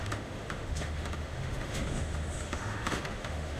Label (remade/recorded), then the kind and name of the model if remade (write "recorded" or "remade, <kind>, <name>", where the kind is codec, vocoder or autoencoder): remade, autoencoder, DAC-VAE